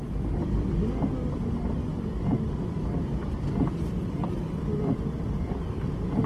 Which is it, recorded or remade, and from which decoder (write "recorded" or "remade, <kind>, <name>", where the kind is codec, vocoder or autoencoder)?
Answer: remade, vocoder, BigVGAN v2